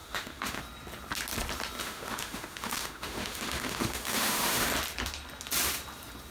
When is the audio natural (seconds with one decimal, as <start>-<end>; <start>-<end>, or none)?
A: 0.6-1.8; 4.7-6.3